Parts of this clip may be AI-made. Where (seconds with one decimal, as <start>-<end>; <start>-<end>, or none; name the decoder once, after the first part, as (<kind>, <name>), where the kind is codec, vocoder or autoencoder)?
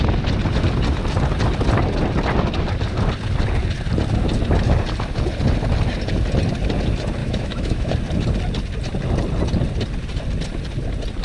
7.2-7.9 (autoencoder, DAC-VAE)